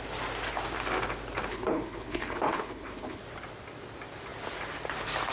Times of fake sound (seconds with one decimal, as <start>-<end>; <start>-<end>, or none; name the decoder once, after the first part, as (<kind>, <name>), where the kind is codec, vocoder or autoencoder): 1.5-3.2 (codec, HILCodec)